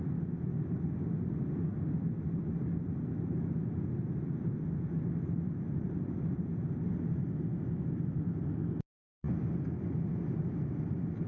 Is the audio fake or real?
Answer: real